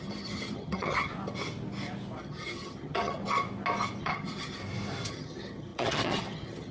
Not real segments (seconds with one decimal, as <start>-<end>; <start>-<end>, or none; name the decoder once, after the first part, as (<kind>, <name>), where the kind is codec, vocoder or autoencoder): 0.0-1.1 (vocoder, HiFi-GAN); 2.2-3.2; 4.0-4.6; 5.1-6.7